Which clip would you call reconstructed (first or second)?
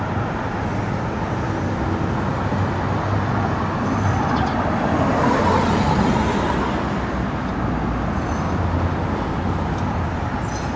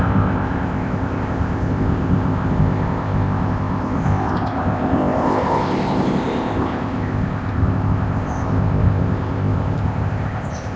second